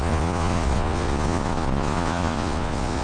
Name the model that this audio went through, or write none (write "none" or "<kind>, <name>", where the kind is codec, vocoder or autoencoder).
vocoder, Vocos